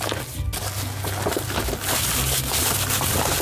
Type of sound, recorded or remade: recorded